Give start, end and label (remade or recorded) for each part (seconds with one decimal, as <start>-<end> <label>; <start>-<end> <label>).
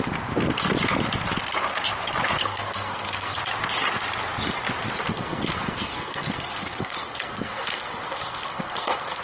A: 0.0-2.4 recorded; 2.4-3.4 remade; 3.4-5.1 recorded; 5.1-9.2 remade